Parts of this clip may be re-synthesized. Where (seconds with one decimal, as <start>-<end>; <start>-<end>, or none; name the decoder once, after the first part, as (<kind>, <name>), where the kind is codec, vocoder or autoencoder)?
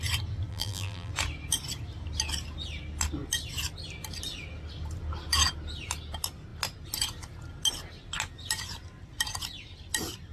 0.5-1.1 (vocoder, BigVGAN v2)